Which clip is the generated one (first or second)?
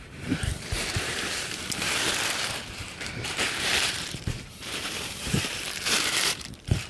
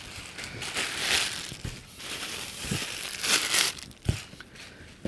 first